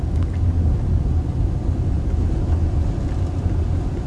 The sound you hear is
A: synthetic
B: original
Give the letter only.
B